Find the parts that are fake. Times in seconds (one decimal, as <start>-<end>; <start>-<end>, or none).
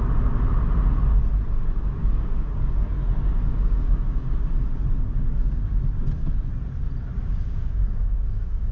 2.0-2.6; 3.5-4.3; 7.2-8.7